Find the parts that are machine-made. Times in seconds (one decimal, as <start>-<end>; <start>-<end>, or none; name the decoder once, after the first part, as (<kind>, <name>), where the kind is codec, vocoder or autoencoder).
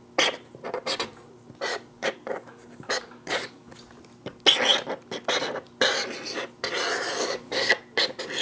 1.7-3.8 (codec, DAC); 7.2-7.7